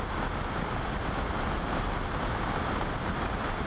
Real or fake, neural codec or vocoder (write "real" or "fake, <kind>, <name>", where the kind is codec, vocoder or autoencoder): real